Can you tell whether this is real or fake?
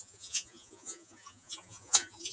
fake